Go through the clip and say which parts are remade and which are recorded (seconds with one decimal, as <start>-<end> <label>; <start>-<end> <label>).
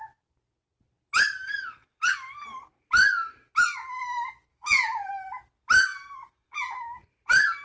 0.0-4.5 recorded; 4.5-5.1 remade; 5.1-5.9 recorded; 5.9-6.8 remade; 6.8-7.6 recorded